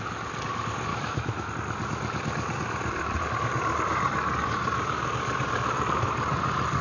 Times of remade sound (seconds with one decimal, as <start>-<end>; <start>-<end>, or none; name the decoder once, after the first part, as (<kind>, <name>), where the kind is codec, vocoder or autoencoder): 0.9-1.5 (autoencoder, DAC-VAE)